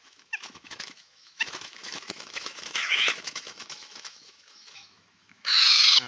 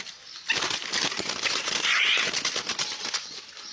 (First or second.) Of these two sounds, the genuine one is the second